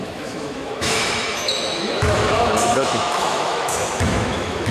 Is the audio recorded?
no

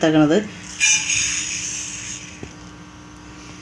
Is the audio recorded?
yes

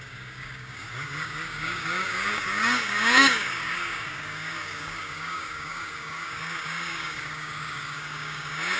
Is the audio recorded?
no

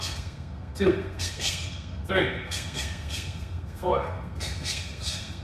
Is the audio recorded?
no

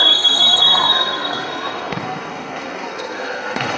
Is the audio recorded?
no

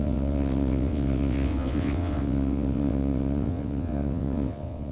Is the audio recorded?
no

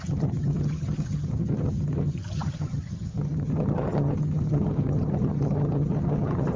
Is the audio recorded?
no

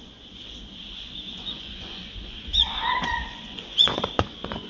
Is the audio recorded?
no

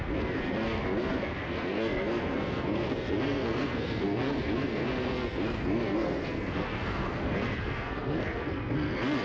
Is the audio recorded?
no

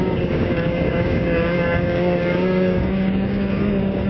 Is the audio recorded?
no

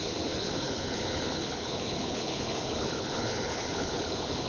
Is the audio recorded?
no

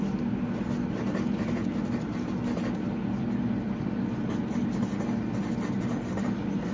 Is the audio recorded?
yes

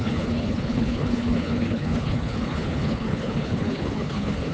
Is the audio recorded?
no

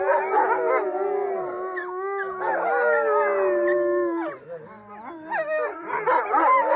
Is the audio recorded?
yes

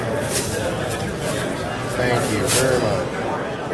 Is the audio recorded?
yes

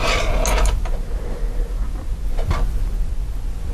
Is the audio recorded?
yes